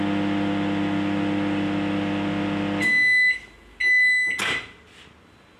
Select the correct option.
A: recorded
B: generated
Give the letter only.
A